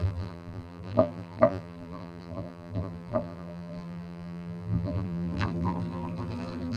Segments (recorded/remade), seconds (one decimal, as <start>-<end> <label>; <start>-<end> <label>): 0.0-6.8 remade